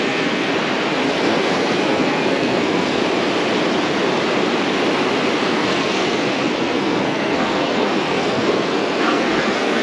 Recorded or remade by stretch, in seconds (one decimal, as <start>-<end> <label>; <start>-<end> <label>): 0.0-0.5 remade; 0.5-1.1 recorded; 1.1-3.0 remade; 3.0-5.4 recorded; 5.4-9.8 remade